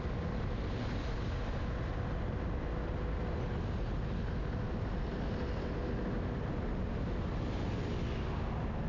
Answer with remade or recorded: recorded